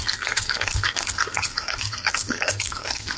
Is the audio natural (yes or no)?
no